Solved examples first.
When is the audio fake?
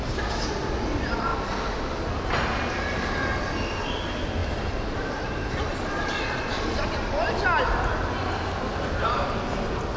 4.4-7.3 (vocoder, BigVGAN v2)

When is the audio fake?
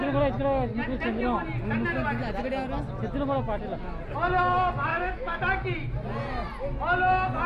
4.9-5.4 (autoencoder, DAC-VAE)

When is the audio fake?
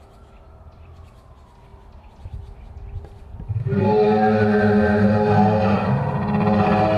none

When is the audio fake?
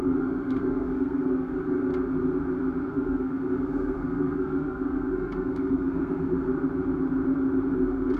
0.0-1.9 (codec, SNAC); 2.9-6.5; 7.7-8.2